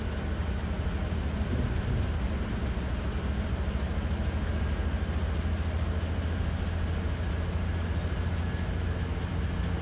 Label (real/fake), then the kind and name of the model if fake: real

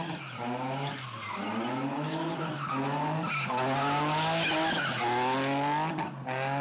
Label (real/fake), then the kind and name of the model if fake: real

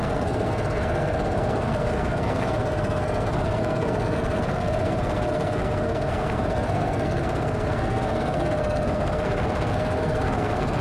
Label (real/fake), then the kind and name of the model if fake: fake, codec, SNAC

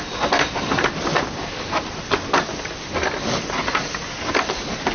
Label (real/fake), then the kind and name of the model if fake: real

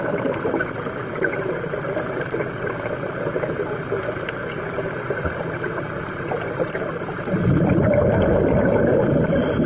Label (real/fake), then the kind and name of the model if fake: fake, vocoder, BigVGAN v2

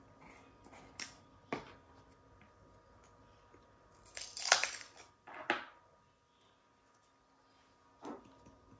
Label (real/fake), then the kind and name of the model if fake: real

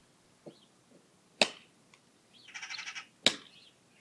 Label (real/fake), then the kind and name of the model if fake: real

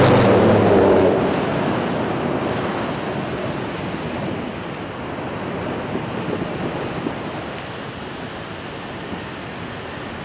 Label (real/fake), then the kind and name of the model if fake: real